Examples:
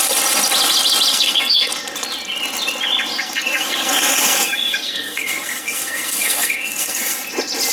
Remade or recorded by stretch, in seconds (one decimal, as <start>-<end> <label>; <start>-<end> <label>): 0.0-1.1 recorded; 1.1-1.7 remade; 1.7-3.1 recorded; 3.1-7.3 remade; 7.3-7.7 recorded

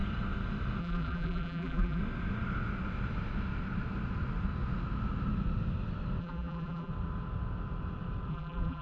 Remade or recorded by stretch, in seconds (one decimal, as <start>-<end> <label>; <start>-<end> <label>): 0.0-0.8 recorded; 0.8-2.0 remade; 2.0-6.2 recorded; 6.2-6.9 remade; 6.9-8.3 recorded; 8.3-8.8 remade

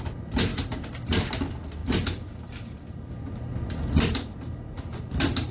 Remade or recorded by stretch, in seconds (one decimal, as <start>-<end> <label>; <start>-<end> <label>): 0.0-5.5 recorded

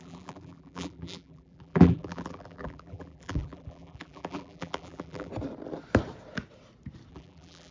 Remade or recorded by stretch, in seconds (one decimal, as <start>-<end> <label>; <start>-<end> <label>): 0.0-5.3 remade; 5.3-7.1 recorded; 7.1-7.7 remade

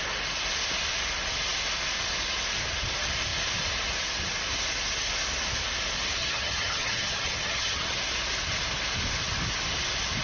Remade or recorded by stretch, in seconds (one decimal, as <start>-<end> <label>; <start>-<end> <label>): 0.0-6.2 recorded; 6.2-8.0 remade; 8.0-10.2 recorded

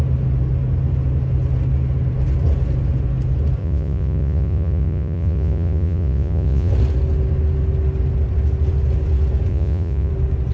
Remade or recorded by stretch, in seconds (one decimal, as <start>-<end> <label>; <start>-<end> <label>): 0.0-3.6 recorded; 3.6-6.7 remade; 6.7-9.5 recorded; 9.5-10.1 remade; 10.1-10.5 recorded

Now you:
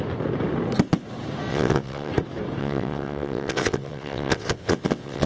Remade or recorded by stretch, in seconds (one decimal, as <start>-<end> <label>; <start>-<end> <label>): 0.0-1.5 recorded; 1.5-2.1 remade; 2.1-2.6 recorded; 2.6-5.3 remade